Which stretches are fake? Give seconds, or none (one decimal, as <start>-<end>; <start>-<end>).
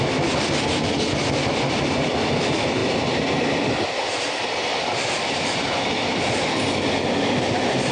none